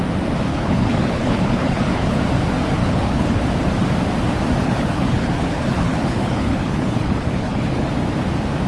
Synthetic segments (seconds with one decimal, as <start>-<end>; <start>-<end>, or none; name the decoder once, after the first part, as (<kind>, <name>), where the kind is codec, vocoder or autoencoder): 0.5-2.2 (codec, HILCodec); 2.8-3.4; 4.6-7.9